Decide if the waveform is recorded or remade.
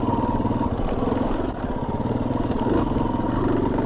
recorded